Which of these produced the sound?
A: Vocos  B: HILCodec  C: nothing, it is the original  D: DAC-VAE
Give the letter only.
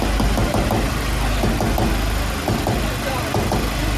C